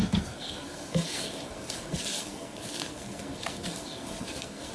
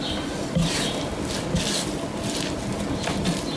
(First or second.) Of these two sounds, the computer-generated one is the first